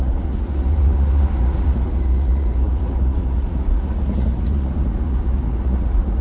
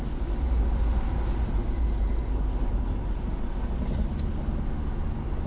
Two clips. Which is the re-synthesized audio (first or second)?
first